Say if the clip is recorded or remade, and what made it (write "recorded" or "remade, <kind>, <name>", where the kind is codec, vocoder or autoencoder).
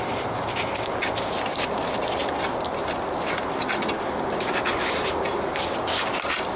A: recorded